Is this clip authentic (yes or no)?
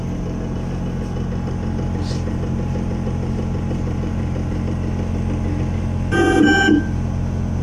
yes